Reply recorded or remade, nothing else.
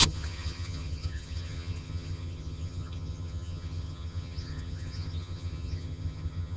remade